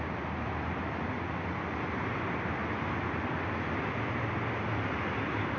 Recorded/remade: recorded